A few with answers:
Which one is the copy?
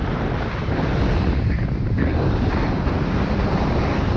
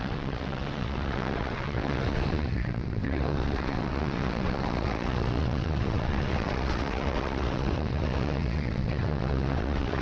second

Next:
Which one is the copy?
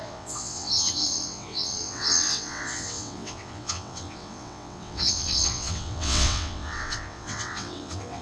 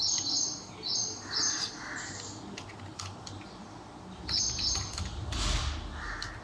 first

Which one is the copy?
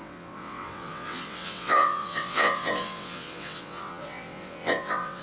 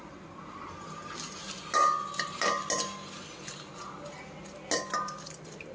first